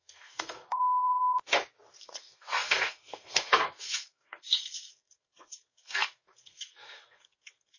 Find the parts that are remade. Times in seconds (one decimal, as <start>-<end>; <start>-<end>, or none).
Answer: 0.0-1.4; 2.0-7.8